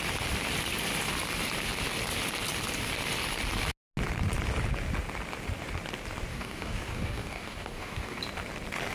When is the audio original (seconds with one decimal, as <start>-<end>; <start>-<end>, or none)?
0.0-6.3; 8.2-8.9